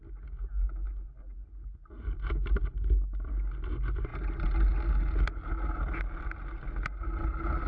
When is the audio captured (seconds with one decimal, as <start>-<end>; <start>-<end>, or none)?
0.0-7.7